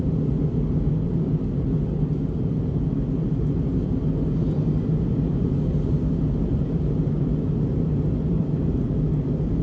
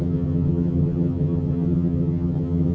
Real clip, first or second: first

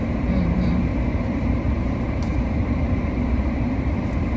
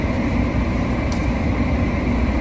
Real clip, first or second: second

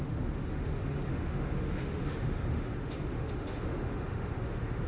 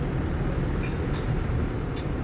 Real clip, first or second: second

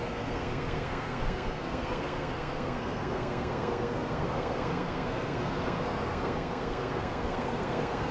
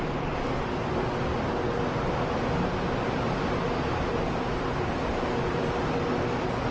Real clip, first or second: second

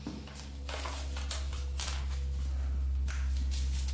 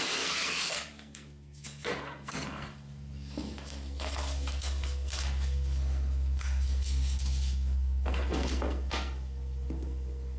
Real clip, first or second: first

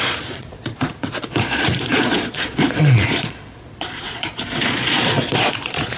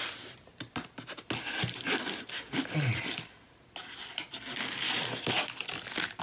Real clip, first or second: second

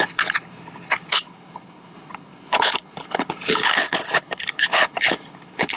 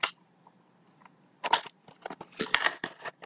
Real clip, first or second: second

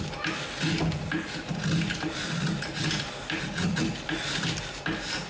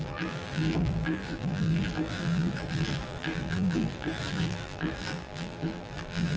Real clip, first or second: first